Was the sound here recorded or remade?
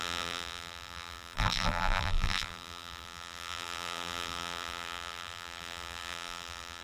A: remade